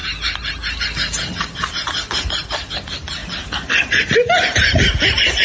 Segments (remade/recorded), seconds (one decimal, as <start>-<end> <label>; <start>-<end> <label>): 0.0-5.4 recorded